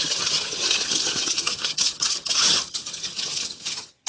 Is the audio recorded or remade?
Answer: remade